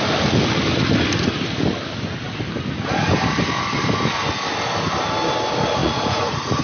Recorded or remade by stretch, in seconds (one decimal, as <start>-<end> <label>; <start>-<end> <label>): 0.0-5.8 recorded; 5.8-6.6 remade